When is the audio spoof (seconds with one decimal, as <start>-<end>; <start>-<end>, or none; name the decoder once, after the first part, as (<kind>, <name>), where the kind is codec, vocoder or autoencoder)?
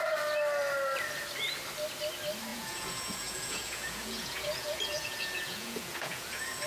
2.5-6.7 (vocoder, Vocos)